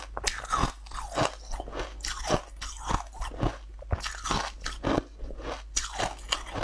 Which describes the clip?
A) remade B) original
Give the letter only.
B